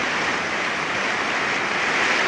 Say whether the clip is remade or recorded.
recorded